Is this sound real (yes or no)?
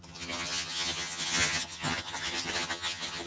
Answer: no